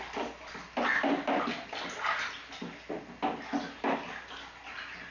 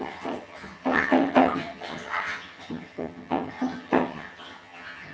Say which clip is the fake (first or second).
second